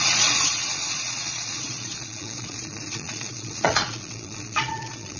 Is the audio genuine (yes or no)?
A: no